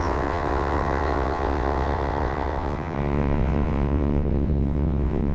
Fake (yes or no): yes